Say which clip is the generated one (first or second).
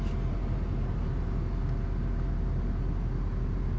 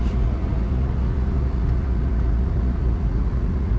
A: second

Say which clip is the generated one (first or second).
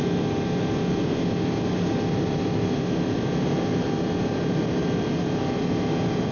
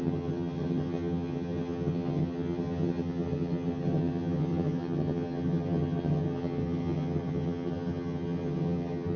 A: second